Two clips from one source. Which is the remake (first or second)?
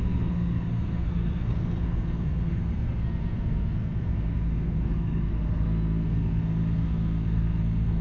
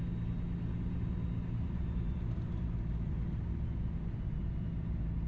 first